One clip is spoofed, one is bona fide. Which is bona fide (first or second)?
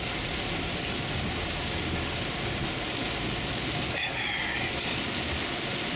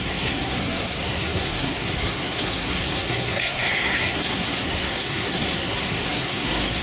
first